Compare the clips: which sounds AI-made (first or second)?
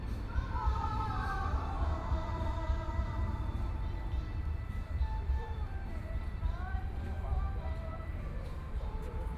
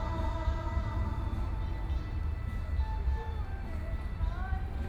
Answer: first